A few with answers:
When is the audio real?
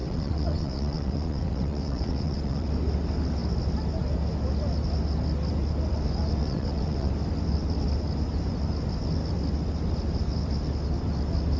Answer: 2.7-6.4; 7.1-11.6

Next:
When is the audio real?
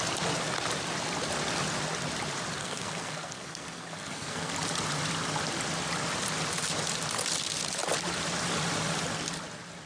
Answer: 0.0-2.6; 4.5-9.9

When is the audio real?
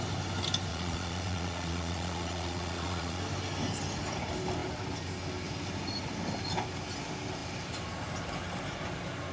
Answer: 0.0-0.7; 3.2-9.3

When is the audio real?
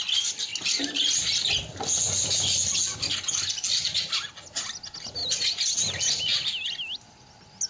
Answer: 0.0-7.7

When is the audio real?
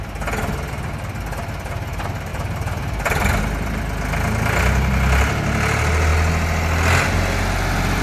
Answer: 0.0-2.3; 3.4-8.0